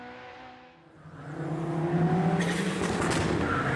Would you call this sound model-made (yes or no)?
no